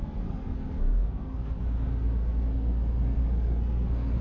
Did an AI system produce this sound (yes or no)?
yes